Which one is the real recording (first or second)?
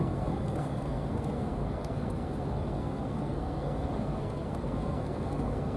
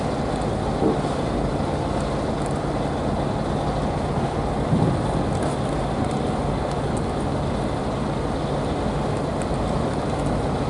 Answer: second